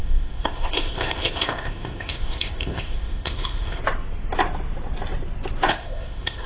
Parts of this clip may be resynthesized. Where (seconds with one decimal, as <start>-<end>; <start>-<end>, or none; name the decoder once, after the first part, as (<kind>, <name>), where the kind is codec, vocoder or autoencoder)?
0.0-3.8 (codec, ZipCodec); 5.7-6.5